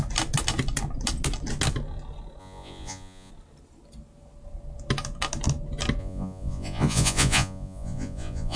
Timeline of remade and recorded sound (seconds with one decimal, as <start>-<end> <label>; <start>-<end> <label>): 0.0-2.4 recorded; 2.4-3.3 remade; 3.3-6.0 recorded; 6.0-8.6 remade